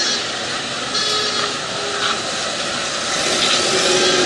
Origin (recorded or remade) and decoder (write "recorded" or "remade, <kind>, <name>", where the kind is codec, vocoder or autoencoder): recorded